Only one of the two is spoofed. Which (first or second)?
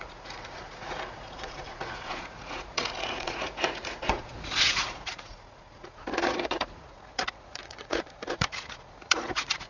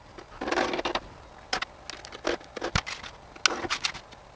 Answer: first